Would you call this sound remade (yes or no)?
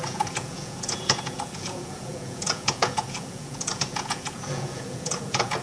yes